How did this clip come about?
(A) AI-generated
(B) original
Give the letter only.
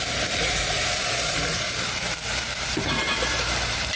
A